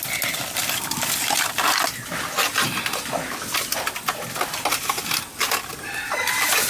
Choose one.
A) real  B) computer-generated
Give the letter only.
A